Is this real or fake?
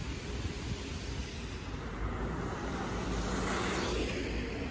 real